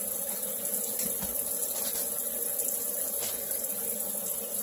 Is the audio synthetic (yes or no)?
no